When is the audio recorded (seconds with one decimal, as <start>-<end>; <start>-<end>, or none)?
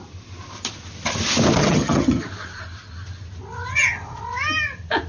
0.0-1.6; 2.2-3.7; 4.2-5.1